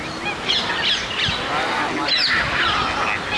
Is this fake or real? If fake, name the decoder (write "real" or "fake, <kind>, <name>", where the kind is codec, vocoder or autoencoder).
real